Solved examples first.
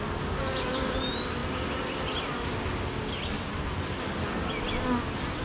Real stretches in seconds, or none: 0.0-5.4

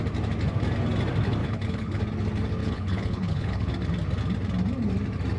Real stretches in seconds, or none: 0.0-1.4; 2.0-2.6; 3.7-5.4

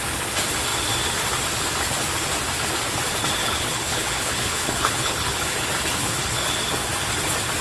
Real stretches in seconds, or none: 0.0-3.4; 5.6-6.0; 6.5-7.6

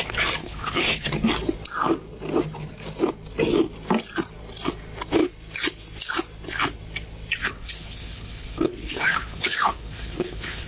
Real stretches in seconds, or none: 0.0-0.4; 1.1-7.4

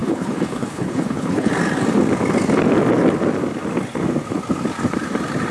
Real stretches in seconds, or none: 1.5-5.5